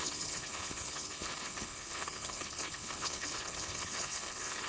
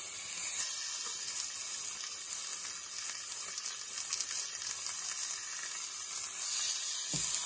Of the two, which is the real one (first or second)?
second